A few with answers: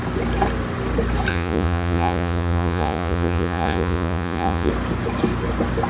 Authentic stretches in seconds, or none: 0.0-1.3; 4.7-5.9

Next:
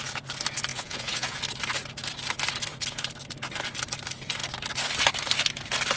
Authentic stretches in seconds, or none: 0.0-0.7; 1.4-6.0

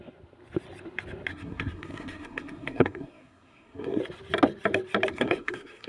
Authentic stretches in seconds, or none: 0.0-1.3; 4.0-5.1